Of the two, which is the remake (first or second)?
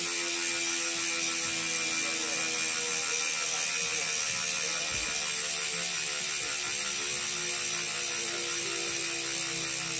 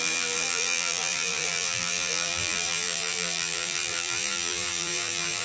second